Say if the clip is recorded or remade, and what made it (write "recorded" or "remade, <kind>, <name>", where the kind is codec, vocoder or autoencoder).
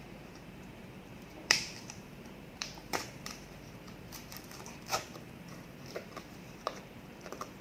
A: remade, vocoder, BigVGAN v2